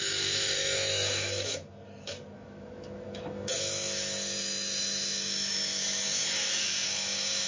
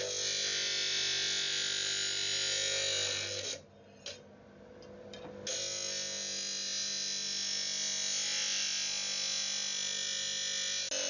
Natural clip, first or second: second